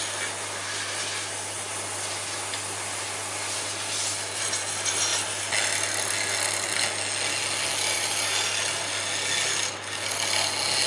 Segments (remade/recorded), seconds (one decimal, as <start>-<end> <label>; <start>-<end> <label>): 0.0-10.9 recorded